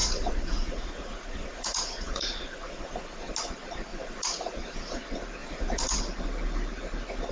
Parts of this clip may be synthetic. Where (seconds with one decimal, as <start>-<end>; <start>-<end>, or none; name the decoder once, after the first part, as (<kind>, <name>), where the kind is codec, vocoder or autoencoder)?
0.0-3.3 (vocoder, Vocos); 3.9-5.0; 5.4-6.0